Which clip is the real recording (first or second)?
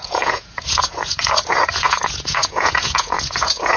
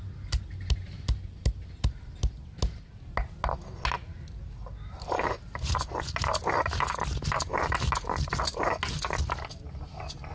second